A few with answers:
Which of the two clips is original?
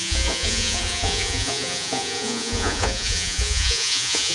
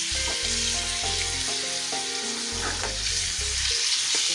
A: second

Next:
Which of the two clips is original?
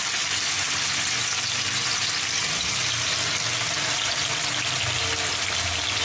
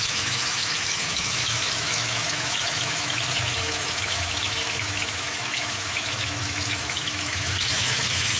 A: first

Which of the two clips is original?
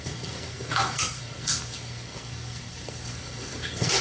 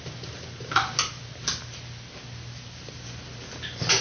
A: second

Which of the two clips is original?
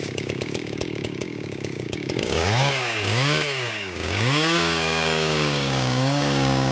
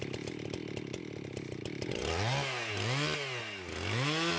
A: second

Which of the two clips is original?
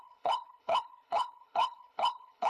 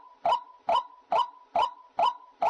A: second